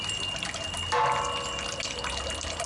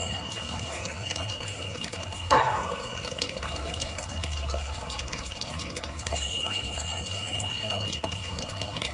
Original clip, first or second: first